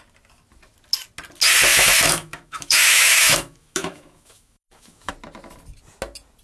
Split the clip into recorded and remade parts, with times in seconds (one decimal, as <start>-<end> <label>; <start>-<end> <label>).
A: 0.0-1.7 recorded; 1.7-5.1 remade; 5.1-6.4 recorded